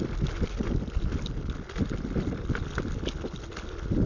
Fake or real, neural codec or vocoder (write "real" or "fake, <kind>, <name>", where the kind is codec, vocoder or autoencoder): real